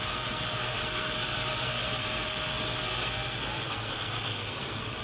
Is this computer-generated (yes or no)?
yes